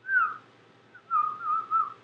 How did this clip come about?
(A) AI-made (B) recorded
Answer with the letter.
B